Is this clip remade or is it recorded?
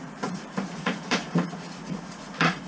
remade